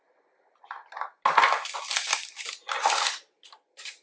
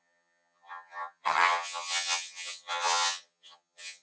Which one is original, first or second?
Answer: first